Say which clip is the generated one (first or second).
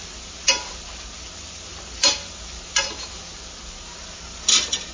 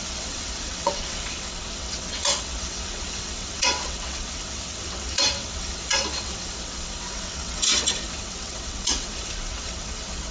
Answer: second